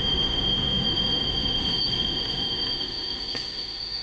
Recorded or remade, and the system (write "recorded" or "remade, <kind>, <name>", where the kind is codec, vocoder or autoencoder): remade, autoencoder, DAC-VAE